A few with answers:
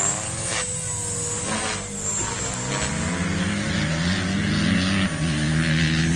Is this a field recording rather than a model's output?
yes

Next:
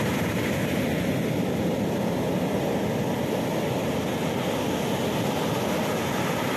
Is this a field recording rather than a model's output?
yes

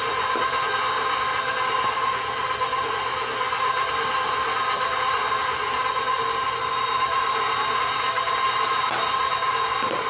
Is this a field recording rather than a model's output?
yes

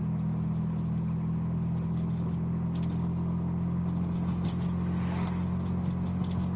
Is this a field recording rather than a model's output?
yes